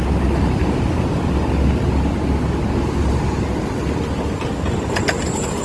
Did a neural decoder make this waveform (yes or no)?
no